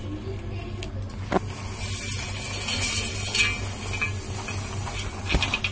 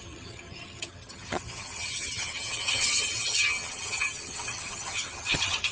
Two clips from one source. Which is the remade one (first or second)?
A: second